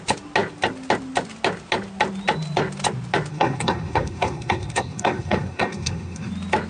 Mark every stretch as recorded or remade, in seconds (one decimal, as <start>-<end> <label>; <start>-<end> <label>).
0.0-3.3 recorded; 3.3-6.3 remade; 6.3-6.7 recorded